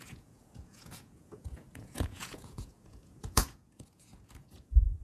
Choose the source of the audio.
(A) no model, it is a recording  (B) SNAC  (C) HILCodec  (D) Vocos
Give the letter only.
D